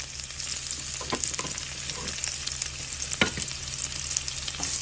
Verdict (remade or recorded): recorded